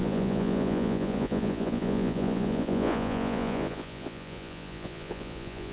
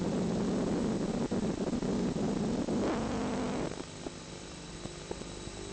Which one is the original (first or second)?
second